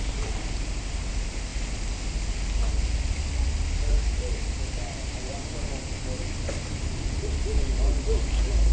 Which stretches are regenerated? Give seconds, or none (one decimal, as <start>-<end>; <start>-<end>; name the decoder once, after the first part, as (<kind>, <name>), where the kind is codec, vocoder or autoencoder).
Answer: none